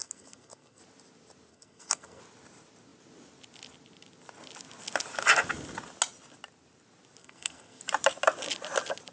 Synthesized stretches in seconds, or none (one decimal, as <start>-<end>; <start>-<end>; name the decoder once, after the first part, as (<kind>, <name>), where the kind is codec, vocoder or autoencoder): 0.0-0.8 (codec, SNAC); 1.5-2.2; 7.2-7.8